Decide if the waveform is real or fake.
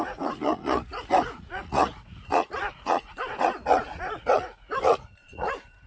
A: fake